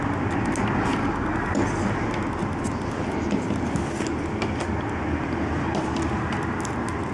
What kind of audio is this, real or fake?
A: real